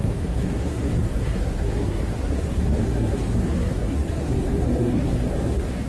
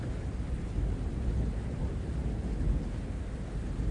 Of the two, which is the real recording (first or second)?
second